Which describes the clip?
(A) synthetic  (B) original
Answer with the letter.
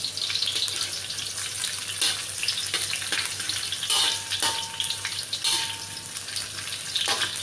B